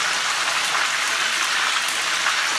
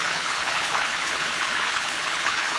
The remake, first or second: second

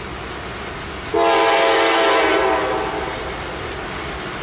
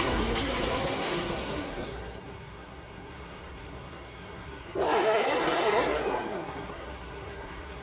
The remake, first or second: second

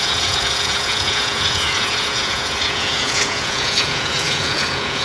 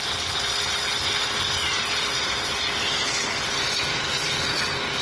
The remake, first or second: first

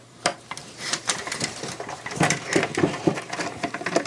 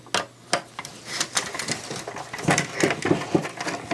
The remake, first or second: first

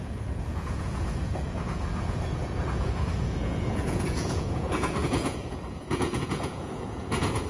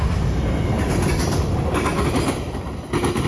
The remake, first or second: first